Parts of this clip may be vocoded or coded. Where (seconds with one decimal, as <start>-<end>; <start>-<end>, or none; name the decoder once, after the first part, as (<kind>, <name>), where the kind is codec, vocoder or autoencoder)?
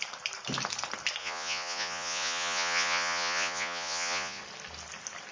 1.2-4.4 (vocoder, Vocos)